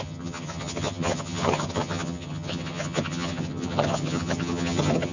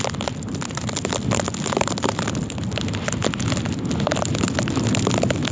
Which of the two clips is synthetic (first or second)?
first